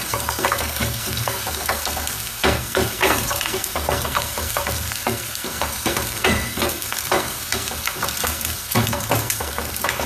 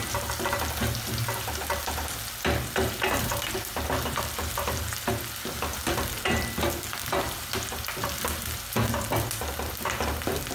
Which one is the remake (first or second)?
first